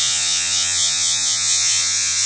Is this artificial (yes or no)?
yes